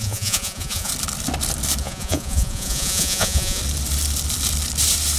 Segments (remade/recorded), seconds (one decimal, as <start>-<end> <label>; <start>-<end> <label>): 0.0-0.9 remade; 0.9-1.8 recorded; 1.8-3.6 remade; 3.6-5.2 recorded